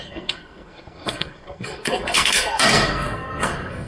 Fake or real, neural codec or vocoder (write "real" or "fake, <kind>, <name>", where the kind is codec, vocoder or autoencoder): fake, codec, SNAC